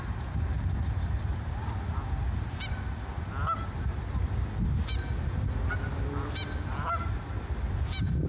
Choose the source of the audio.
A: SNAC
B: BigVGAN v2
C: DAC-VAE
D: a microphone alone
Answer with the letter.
B